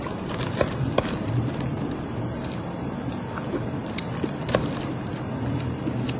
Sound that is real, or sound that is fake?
fake